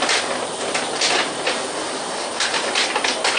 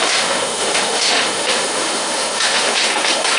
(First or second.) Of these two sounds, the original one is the first